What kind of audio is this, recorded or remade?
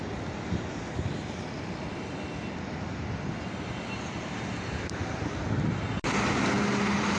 recorded